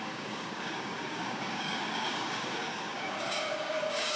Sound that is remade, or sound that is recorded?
remade